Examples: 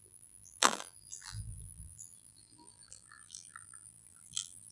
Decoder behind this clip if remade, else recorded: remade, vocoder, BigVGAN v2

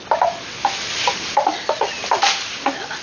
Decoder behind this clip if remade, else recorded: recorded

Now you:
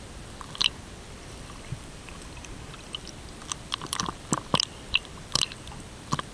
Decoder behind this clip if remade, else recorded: remade, vocoder, BigVGAN v2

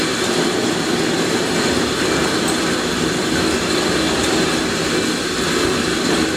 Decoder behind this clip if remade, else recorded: recorded